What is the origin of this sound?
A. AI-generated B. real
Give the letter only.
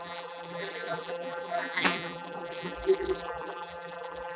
A